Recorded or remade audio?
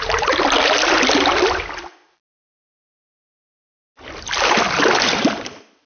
recorded